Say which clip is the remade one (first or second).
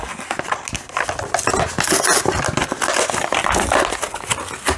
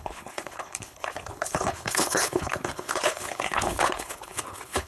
second